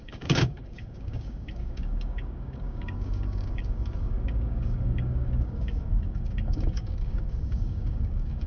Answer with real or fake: fake